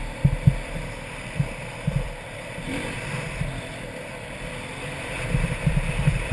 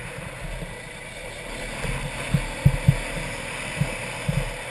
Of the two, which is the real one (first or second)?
second